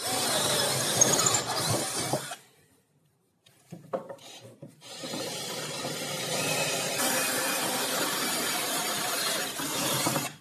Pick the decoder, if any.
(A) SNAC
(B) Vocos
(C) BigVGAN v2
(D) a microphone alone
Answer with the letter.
C